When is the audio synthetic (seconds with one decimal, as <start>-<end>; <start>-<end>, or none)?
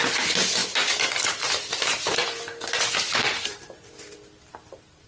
0.6-1.5; 2.2-3.8